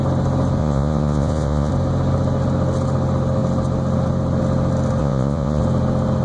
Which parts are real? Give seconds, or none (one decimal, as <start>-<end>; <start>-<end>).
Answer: 0.0-0.6; 1.7-5.0; 5.6-6.2

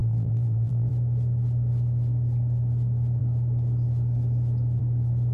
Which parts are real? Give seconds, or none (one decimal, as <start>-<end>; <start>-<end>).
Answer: 0.9-5.3

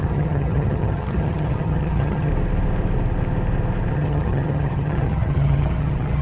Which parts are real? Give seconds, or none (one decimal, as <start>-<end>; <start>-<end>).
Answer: 2.3-3.9

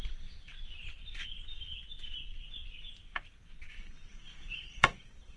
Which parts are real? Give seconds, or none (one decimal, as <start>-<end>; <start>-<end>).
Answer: 0.5-3.7

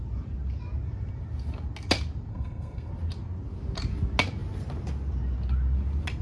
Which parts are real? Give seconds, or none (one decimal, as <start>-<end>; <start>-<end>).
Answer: 0.0-2.3; 2.9-6.2

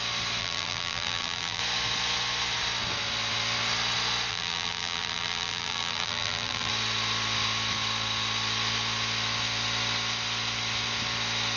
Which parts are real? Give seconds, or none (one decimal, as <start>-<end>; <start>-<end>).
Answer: 0.0-0.4; 1.6-4.3; 6.7-11.6